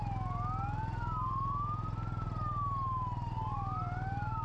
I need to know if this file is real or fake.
real